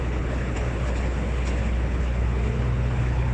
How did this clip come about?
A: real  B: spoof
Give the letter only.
B